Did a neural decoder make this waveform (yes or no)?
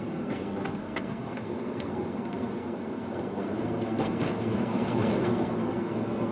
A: yes